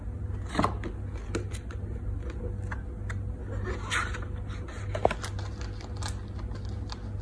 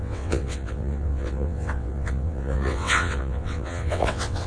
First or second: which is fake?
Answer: second